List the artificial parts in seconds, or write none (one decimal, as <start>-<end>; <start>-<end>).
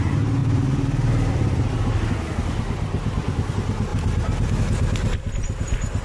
none